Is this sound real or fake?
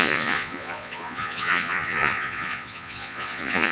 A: fake